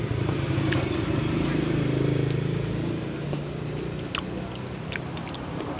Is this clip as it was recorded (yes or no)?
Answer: yes